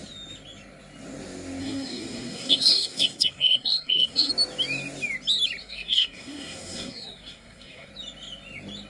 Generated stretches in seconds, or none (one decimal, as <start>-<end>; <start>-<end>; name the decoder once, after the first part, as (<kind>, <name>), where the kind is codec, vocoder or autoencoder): 1.6-4.3 (codec, SNAC); 5.6-7.9